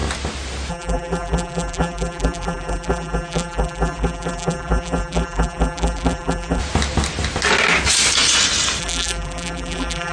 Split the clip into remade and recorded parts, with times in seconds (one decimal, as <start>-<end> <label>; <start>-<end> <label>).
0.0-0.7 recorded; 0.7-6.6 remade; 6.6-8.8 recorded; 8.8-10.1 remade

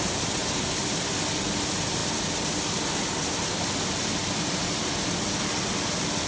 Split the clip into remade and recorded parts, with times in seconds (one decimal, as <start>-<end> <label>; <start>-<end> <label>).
0.0-0.4 recorded; 0.4-0.9 remade; 0.9-6.3 recorded

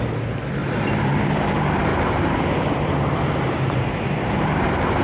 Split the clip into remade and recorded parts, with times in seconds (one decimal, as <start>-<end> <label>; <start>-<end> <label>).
0.0-0.6 recorded; 0.6-1.5 remade; 1.5-1.9 recorded; 1.9-5.0 remade